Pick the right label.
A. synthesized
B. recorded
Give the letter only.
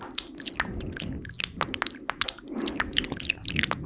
B